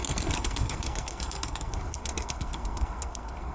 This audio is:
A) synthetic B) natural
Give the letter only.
A